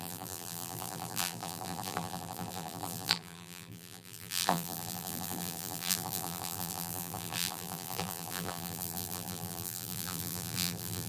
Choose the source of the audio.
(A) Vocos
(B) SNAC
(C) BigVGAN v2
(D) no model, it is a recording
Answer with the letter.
C